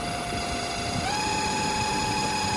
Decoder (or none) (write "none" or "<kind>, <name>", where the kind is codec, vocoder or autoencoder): none